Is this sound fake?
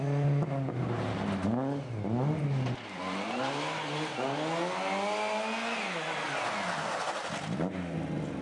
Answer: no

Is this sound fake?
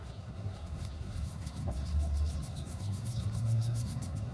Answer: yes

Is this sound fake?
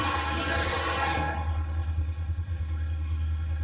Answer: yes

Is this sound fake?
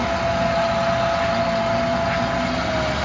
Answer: no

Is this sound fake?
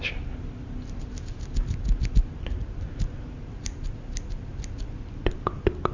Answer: no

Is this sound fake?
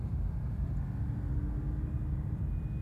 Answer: no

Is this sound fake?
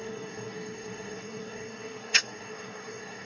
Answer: yes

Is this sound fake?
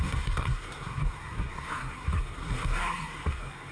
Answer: yes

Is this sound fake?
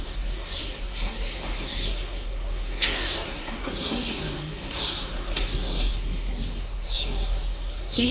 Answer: yes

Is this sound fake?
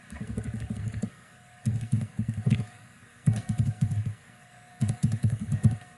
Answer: yes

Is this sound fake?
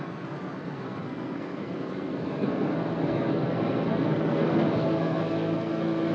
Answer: yes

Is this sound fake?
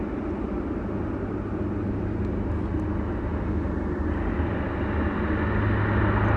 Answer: no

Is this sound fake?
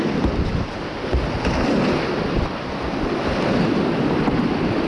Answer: no